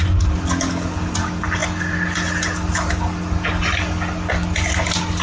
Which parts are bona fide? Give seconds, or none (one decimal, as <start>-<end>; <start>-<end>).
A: 0.0-5.2